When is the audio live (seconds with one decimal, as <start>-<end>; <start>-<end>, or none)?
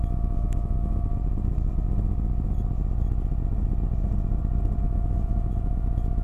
1.1-4.8